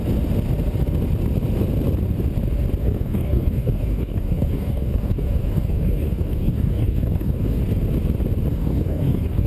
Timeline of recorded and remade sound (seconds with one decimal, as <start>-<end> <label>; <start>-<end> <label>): 0.0-2.8 recorded; 2.8-7.6 remade; 7.6-8.5 recorded; 8.5-9.5 remade